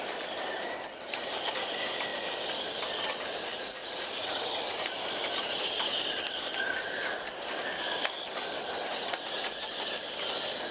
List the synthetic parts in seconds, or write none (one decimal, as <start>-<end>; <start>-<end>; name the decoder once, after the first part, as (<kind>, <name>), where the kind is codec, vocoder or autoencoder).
3.5-4.5 (vocoder, Vocos); 8.9-9.6